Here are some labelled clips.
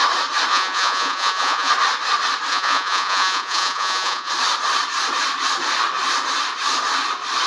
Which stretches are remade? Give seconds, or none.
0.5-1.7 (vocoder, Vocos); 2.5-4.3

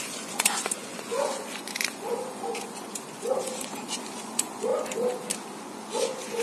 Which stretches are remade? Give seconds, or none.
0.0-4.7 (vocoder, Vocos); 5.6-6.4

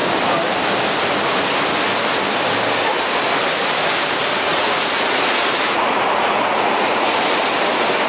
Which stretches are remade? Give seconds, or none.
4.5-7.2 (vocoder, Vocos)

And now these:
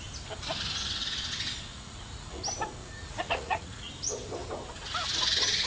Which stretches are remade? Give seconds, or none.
1.7-2.4 (vocoder, Vocos); 2.8-3.9

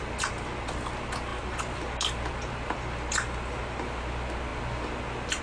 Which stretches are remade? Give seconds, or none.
none

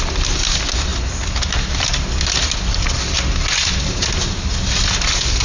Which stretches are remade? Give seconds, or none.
none

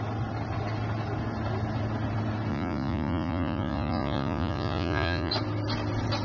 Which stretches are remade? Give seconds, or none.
2.5-5.3 (vocoder, Vocos)